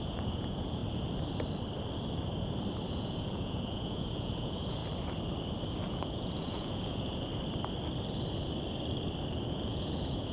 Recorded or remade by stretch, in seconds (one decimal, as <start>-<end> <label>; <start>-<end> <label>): 0.0-0.8 remade; 0.8-2.9 recorded; 2.9-4.8 remade; 4.8-5.9 recorded; 5.9-7.3 remade; 7.3-9.5 recorded; 9.5-10.3 remade